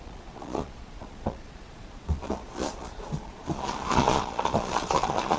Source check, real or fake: fake